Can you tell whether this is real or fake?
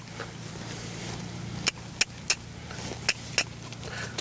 real